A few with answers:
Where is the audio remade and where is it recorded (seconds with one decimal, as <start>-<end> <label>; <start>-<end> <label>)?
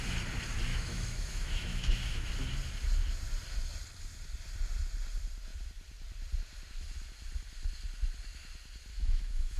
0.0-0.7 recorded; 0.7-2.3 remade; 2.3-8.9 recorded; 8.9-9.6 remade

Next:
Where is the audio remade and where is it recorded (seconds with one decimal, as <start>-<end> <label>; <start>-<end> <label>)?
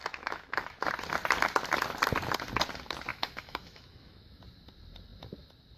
0.0-0.9 remade; 0.9-3.1 recorded; 3.1-4.4 remade; 4.4-5.8 recorded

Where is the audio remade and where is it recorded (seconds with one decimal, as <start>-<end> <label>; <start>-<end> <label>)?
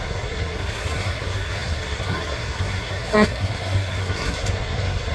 0.0-5.1 remade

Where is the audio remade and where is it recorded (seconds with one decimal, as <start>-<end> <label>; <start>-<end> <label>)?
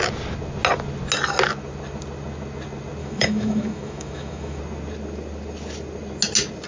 0.0-3.0 recorded; 3.0-4.6 remade; 4.6-6.7 recorded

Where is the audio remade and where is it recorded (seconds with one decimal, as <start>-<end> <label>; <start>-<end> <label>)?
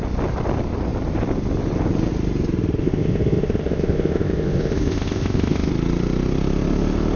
0.0-2.8 recorded; 2.8-5.7 remade; 5.7-7.2 recorded